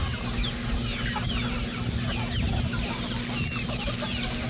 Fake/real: real